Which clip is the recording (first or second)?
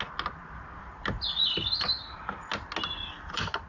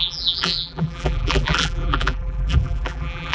first